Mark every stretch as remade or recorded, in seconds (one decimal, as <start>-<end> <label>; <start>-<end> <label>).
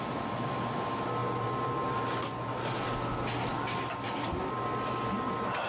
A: 0.0-5.7 recorded